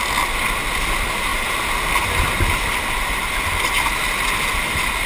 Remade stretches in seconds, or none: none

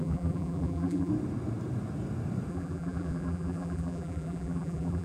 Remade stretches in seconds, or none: 0.0-1.1 (vocoder, BigVGAN v2); 2.5-5.0

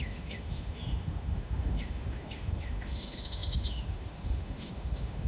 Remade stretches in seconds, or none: 0.0-5.3 (autoencoder, DAC-VAE)

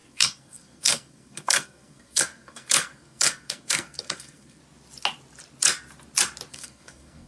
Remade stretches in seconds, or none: 0.0-4.6 (codec, SNAC); 6.5-7.3